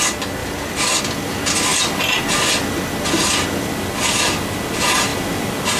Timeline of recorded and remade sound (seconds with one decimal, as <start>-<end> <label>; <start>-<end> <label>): 0.0-0.4 recorded; 0.4-1.0 remade; 1.0-5.1 recorded; 5.1-5.8 remade